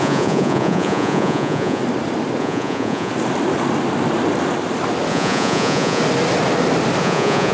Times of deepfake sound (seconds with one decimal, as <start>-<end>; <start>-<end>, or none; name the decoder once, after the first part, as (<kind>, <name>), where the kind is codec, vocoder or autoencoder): 0.0-1.8 (vocoder, Vocos); 2.4-3.1; 5.1-6.0; 7.0-7.5